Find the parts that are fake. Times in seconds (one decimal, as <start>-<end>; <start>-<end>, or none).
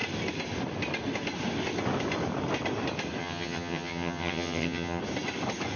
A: 3.2-5.0